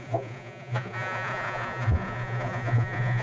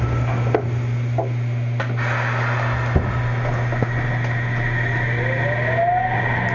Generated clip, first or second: first